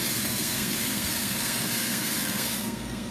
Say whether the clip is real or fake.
fake